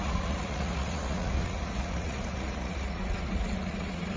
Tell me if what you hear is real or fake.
fake